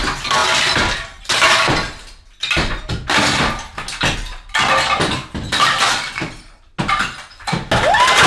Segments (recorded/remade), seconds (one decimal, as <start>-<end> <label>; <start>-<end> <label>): 0.0-8.3 recorded